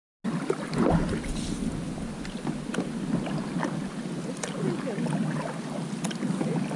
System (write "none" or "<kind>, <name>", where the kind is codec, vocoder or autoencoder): none